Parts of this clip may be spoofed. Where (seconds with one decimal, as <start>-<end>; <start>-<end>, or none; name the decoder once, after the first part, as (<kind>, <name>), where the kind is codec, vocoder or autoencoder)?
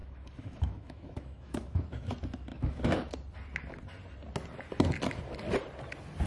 0.0-2.1 (autoencoder, DAC-VAE); 2.5-3.1